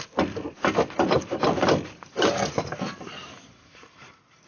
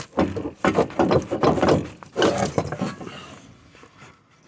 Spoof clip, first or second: first